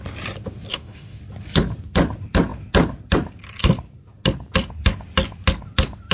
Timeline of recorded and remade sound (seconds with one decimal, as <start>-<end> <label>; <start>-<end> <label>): 0.0-0.7 recorded; 0.7-1.2 remade; 1.2-6.1 recorded